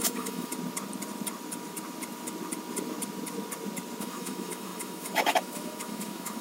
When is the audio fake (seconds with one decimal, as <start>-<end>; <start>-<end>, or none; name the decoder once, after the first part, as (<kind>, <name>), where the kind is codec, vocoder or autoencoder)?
0.0-0.5 (autoencoder, DAC-VAE); 4.0-6.4